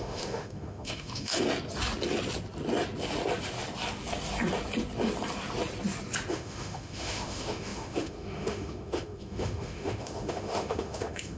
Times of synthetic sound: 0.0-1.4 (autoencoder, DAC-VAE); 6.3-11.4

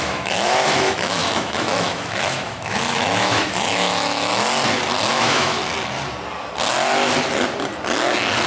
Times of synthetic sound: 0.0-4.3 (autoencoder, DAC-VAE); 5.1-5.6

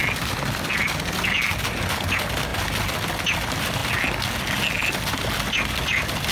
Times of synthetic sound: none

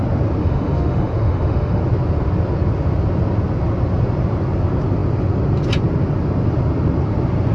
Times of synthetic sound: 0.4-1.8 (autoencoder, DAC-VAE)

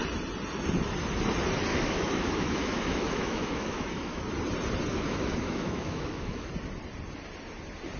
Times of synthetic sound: 1.7-4.2 (autoencoder, DAC-VAE); 4.9-6.5

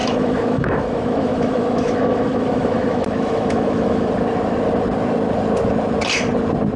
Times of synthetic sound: 0.0-4.1 (autoencoder, DAC-VAE)

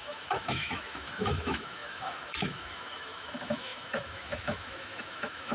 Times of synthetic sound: 0.0-5.5 (autoencoder, DAC-VAE)

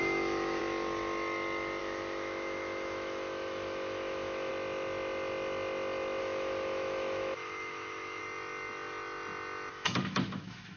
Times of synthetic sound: 0.0-0.6 (autoencoder, DAC-VAE); 1.8-4.5; 6.2-8.2; 9.7-10.8